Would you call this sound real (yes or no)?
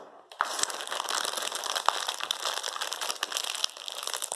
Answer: yes